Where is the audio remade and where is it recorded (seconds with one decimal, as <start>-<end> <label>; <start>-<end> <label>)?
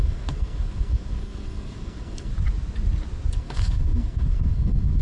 0.0-2.3 remade; 2.3-3.3 recorded; 3.3-5.0 remade